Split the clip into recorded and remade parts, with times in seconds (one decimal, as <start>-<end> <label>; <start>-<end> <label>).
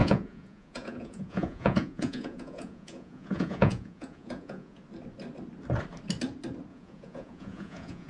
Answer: 0.0-4.8 remade; 4.8-6.7 recorded; 6.7-8.1 remade